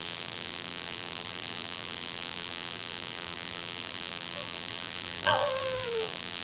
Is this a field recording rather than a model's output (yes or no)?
no